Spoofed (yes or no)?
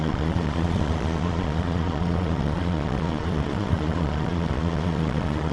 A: yes